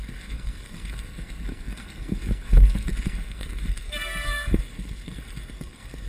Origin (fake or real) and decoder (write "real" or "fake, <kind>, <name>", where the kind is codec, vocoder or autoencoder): fake, codec, SNAC